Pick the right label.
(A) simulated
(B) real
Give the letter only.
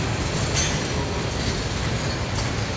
B